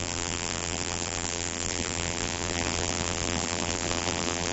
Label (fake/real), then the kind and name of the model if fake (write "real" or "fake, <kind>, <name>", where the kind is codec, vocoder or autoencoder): fake, vocoder, BigVGAN v2